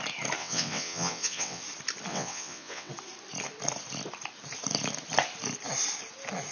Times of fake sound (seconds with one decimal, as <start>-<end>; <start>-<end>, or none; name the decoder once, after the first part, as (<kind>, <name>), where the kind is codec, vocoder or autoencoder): 0.4-1.6 (vocoder, WaveNeXt); 2.1-2.9